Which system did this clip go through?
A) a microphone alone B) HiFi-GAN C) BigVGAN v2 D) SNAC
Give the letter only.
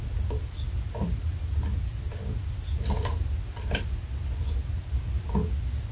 A